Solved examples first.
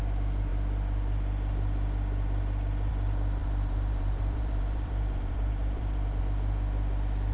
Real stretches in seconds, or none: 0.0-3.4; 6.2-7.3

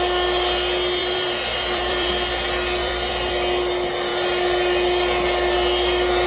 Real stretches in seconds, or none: 0.0-1.0; 2.1-2.8; 3.3-6.3

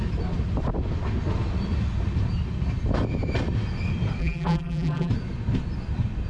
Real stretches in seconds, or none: 0.0-4.2; 5.1-6.3

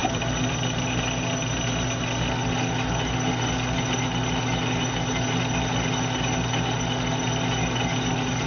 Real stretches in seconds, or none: 0.8-8.5

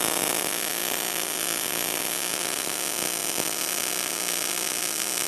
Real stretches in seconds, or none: 0.0-0.8; 2.3-5.3

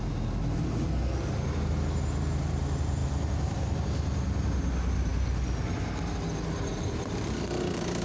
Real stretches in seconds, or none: 0.0-3.0; 3.7-8.0

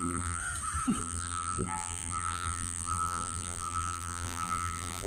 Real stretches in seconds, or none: 0.4-1.0

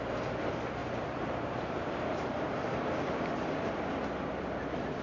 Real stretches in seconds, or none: 0.0-0.8; 3.8-5.0